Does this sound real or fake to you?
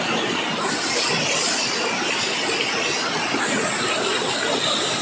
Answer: real